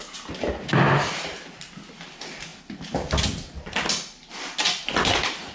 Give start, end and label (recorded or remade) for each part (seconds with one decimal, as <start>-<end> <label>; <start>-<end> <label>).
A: 0.0-5.5 recorded